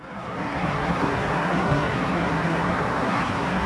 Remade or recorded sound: remade